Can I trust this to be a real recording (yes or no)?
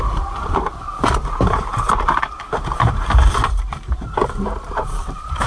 no